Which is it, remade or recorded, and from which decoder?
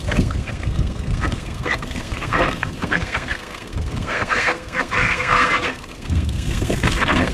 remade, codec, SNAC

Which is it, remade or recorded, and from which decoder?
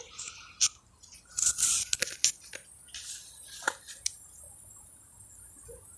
recorded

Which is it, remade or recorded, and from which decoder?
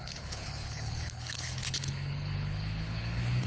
remade, codec, HILCodec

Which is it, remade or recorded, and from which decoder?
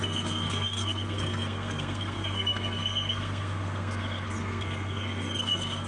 remade, codec, SNAC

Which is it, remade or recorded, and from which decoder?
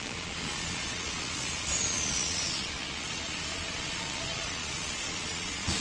remade, vocoder, Vocos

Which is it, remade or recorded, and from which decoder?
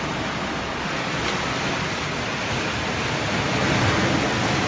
recorded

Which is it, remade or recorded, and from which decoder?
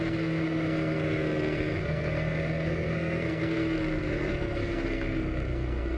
remade, codec, SNAC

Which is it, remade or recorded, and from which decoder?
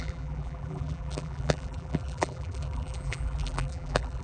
remade, vocoder, BigVGAN v2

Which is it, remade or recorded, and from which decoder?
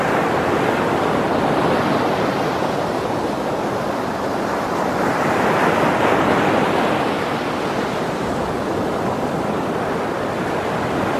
recorded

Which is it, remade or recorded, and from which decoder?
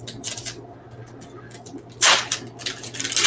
recorded